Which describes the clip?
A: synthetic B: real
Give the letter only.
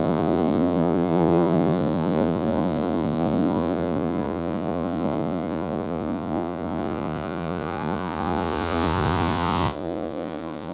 A